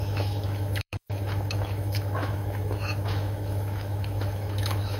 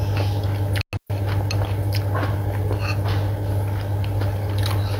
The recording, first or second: second